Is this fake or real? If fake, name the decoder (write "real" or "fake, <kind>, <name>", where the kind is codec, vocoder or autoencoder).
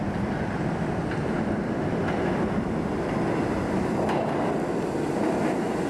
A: real